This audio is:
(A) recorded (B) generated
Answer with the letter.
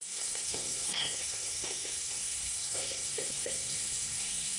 B